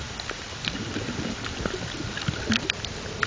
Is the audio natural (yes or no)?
yes